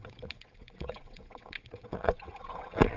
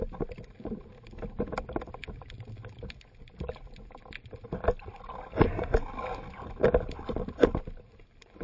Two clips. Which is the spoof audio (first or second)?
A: first